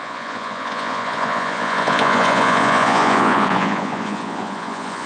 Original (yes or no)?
no